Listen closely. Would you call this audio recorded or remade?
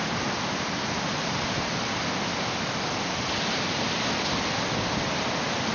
recorded